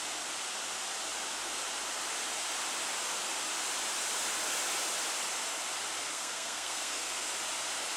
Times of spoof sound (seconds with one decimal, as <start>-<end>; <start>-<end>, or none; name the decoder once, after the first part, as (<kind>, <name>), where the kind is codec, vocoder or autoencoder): 6.1-7.3 (codec, SNAC)